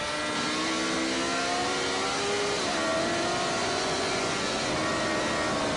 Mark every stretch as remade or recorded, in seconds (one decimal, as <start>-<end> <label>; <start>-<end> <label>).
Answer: 0.0-3.6 recorded; 3.6-4.7 remade; 4.7-5.8 recorded